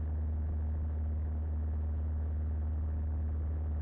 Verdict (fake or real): real